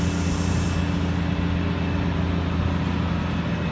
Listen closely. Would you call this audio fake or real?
real